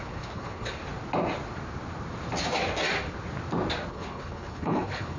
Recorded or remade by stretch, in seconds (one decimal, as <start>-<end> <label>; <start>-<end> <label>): 0.0-0.8 remade; 0.8-3.9 recorded; 3.9-5.2 remade